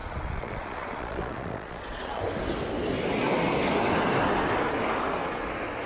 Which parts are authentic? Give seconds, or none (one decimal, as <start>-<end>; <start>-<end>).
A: 2.2-5.9